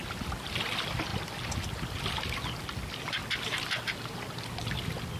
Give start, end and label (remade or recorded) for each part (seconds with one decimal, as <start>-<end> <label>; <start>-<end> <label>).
0.0-5.2 recorded

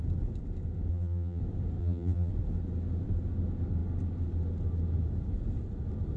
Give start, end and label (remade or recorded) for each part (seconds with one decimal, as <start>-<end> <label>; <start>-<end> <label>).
0.0-0.9 recorded; 0.9-1.4 remade; 1.4-1.8 recorded; 1.8-2.3 remade; 2.3-6.2 recorded